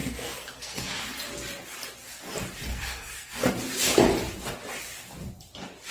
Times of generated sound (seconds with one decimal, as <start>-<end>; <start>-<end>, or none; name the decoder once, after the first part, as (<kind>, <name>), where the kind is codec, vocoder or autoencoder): 0.0-1.0 (codec, SNAC); 2.7-3.5